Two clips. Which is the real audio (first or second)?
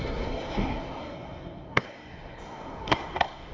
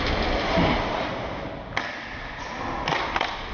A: second